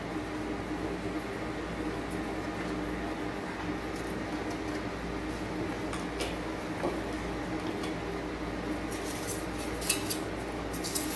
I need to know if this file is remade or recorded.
recorded